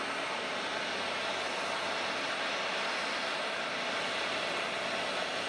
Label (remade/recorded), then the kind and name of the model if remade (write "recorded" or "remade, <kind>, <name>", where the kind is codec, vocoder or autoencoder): recorded